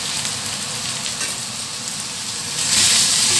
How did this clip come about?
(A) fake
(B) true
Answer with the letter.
B